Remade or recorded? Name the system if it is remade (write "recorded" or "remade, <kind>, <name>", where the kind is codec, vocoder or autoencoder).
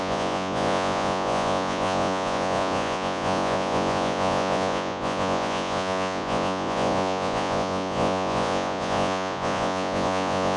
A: remade, vocoder, Vocos